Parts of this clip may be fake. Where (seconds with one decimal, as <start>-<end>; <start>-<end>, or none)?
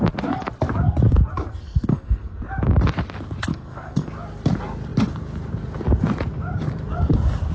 1.5-2.4; 3.5-4.1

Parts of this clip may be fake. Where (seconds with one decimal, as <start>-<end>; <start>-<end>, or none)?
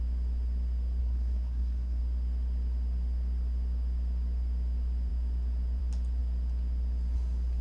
1.0-2.0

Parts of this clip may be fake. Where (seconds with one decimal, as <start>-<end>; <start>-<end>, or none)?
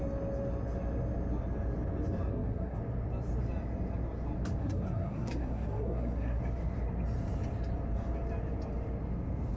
2.3-2.8; 4.6-6.4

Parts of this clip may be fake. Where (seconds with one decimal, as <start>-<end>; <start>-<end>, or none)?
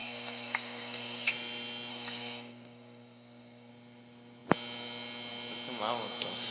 0.0-1.3; 1.9-3.7